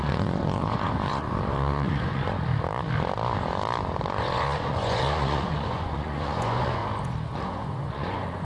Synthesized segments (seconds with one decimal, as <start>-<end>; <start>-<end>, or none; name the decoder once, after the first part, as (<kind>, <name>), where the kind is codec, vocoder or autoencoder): 0.0-2.5 (vocoder, Vocos); 4.1-6.8; 7.3-8.4